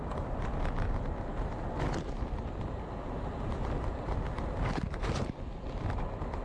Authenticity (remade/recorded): recorded